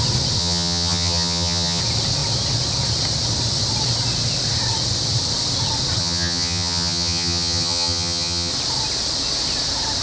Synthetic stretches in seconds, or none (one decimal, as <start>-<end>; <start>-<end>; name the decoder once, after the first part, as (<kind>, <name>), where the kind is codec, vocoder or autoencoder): 0.4-1.8 (vocoder, HiFi-GAN); 6.0-8.5